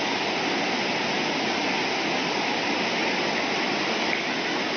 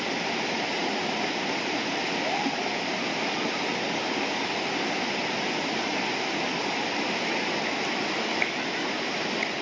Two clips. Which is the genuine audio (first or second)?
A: first